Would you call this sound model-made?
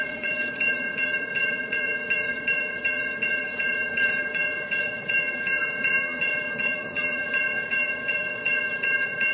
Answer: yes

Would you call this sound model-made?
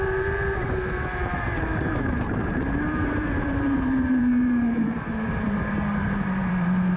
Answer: yes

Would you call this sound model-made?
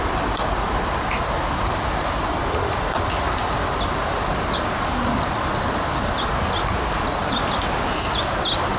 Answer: no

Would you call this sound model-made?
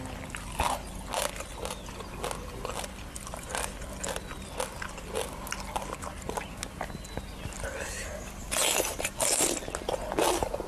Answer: no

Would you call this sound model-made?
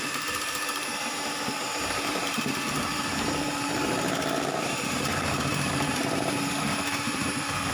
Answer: yes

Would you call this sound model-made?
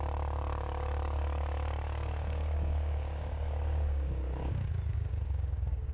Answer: yes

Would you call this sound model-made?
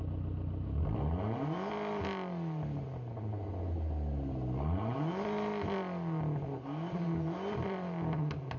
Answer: no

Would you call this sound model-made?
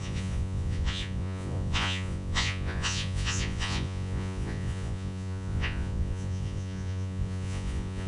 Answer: yes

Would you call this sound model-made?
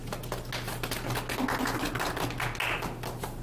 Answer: no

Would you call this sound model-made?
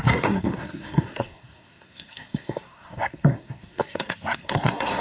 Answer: yes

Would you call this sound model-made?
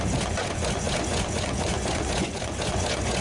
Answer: yes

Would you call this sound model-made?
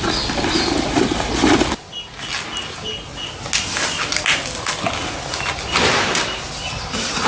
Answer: no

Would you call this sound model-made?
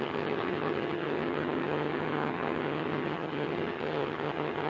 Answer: yes